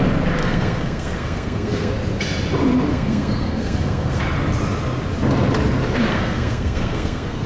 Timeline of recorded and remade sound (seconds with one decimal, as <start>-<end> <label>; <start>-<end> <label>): 0.0-0.4 recorded; 0.4-1.9 remade; 1.9-2.9 recorded; 2.9-4.2 remade; 4.2-6.1 recorded; 6.1-7.5 remade